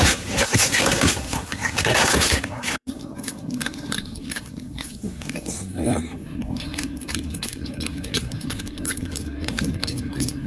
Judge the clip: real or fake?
fake